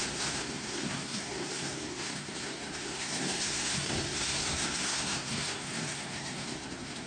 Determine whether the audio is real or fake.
fake